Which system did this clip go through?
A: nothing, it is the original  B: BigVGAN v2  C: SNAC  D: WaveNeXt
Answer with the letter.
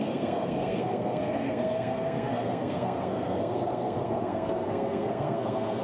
C